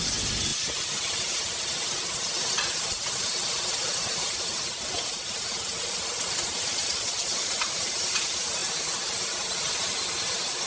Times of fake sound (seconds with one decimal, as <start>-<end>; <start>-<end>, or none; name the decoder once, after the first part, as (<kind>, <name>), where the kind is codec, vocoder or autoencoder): 6.7-7.5 (vocoder, Vocos)